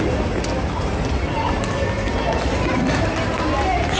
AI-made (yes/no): no